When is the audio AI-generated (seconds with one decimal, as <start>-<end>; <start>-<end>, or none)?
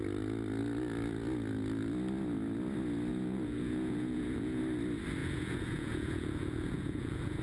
3.1-4.6; 5.2-7.4